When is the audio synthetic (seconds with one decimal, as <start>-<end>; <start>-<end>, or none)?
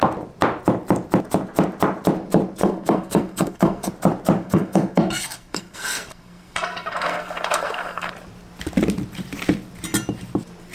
2.6-3.9; 4.4-8.1